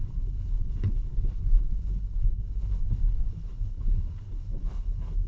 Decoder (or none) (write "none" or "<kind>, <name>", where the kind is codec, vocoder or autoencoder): codec, HILCodec